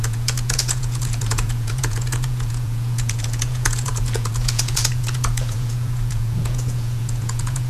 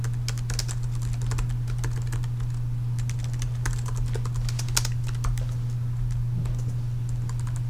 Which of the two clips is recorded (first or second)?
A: second